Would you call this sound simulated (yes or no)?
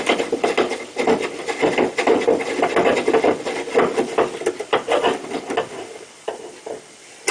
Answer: no